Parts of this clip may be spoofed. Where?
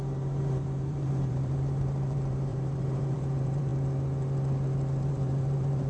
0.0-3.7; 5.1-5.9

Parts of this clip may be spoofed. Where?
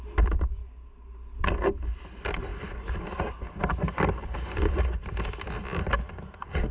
none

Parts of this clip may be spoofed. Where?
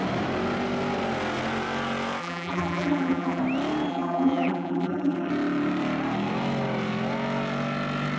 2.2-3.4; 3.9-5.3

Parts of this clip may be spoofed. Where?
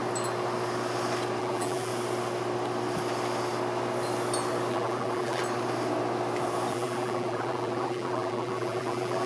1.4-1.9; 4.7-5.4; 6.7-9.3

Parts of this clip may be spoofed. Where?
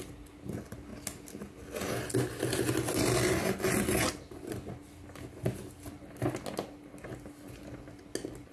none